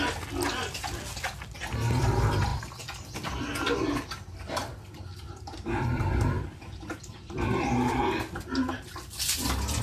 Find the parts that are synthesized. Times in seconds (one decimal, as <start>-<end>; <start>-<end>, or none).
2.5-3.0; 4.6-8.0